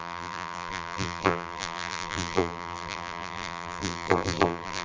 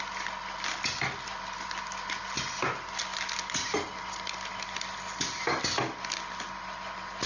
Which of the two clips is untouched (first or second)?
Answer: second